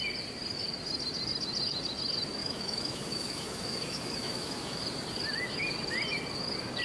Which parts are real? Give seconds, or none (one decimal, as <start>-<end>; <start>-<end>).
0.0-2.4; 4.8-6.8